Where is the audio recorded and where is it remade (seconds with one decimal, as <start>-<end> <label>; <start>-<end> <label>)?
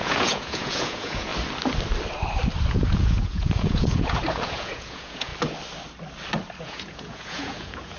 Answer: 0.0-1.3 remade; 1.3-2.7 recorded; 2.7-5.3 remade; 5.3-6.6 recorded; 6.6-8.0 remade